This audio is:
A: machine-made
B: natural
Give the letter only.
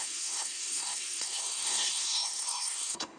A